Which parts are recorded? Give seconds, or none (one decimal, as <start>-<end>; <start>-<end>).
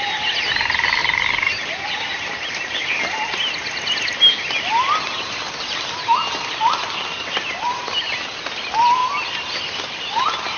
0.0-10.6